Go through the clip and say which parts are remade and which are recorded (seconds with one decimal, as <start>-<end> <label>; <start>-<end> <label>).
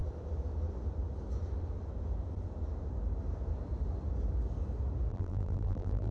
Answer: 0.0-5.1 recorded; 5.1-6.1 remade